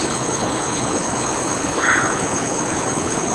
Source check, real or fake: fake